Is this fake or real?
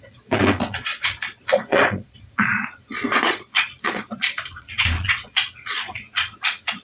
fake